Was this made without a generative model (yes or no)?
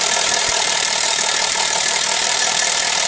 no